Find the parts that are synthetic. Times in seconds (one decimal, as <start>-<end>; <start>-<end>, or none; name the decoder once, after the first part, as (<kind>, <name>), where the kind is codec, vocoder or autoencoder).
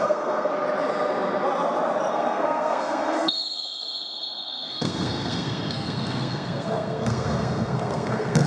0.0-0.5 (codec, SNAC); 2.1-8.5